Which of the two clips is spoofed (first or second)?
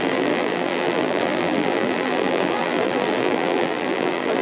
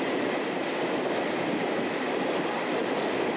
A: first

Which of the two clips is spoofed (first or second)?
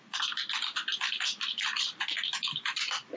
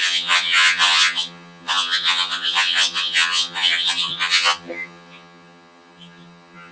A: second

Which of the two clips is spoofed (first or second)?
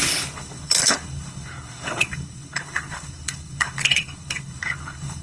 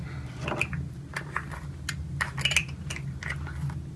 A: first